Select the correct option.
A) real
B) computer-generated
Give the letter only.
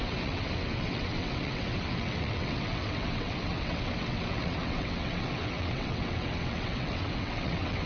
B